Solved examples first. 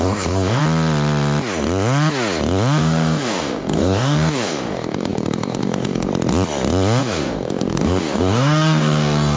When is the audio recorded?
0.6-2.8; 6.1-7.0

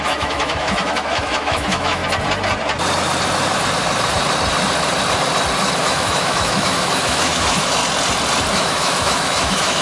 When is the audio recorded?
2.0-5.8; 7.8-8.5

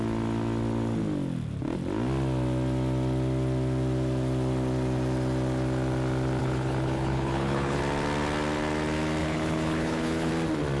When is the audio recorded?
0.0-6.4; 7.8-9.2; 10.3-10.8

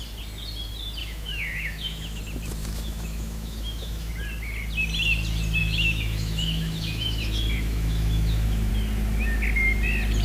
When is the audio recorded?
0.0-1.0; 2.2-2.6; 4.1-5.6; 8.7-10.2